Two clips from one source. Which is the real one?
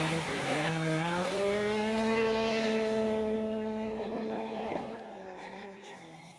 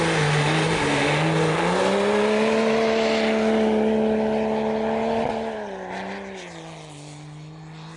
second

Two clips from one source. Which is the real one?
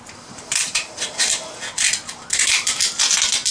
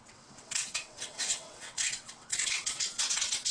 first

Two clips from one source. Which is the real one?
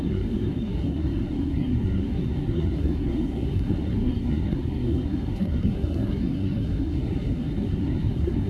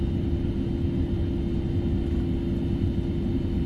second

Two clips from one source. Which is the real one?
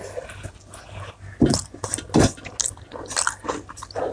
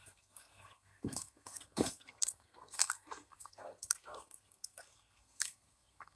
first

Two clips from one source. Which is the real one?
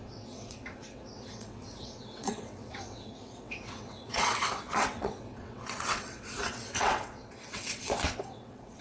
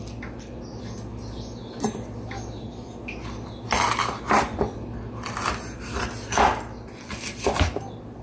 second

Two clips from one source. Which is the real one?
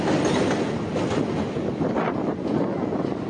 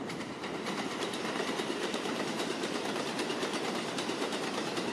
first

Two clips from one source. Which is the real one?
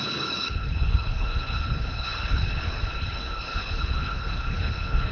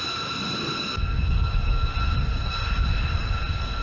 second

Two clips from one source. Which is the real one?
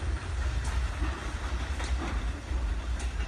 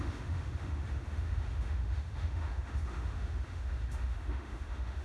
first